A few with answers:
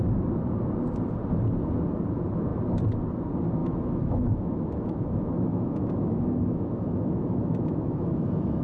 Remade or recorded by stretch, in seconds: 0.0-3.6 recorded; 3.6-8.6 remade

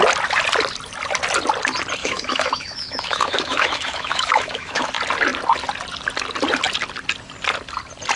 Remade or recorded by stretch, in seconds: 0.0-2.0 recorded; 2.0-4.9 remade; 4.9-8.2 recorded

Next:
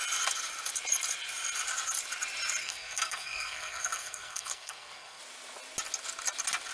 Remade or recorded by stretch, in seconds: 0.0-2.6 recorded; 2.6-5.2 remade; 5.2-6.7 recorded